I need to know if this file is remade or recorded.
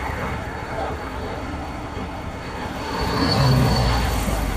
remade